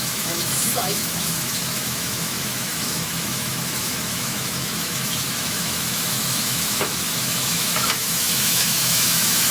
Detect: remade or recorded remade